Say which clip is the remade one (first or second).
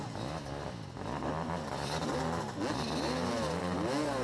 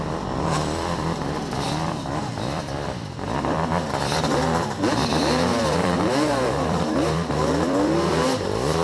second